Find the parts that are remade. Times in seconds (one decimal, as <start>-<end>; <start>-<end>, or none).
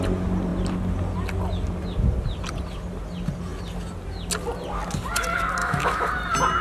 5.6-6.1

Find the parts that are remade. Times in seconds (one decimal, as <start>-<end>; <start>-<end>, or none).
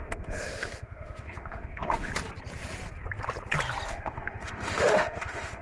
0.0-2.1; 3.9-5.6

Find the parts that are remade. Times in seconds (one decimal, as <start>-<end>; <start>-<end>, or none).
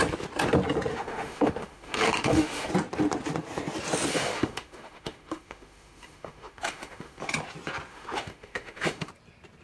0.9-2.7; 4.1-7.2; 7.9-9.1